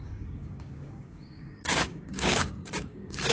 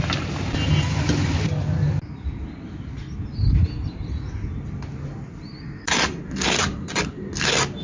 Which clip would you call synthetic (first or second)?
first